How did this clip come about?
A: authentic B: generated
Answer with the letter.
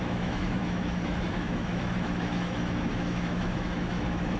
B